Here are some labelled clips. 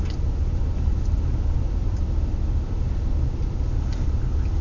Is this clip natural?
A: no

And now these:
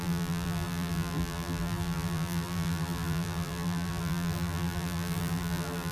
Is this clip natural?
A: no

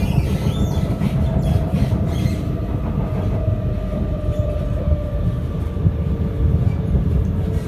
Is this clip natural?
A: no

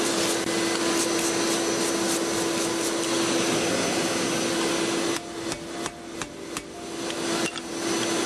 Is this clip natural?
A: yes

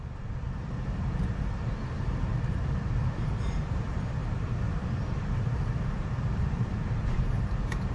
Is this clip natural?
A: no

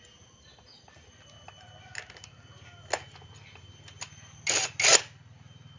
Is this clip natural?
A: yes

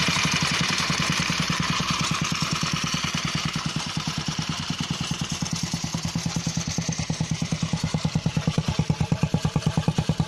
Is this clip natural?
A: no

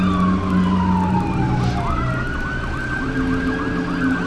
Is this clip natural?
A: yes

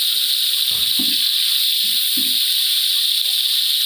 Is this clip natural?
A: yes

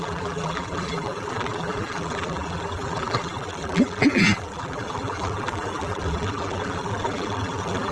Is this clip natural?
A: no